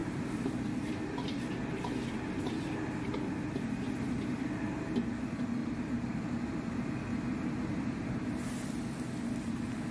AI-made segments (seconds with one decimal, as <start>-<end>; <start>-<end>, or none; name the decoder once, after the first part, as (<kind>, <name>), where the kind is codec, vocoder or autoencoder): 0.0-0.6 (vocoder, BigVGAN v2); 5.6-6.7